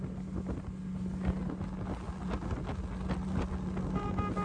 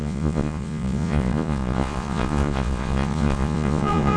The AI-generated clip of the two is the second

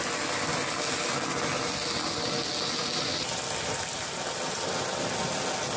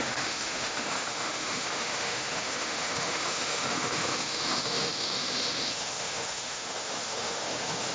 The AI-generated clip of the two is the second